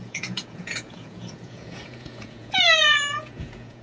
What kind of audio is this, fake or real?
fake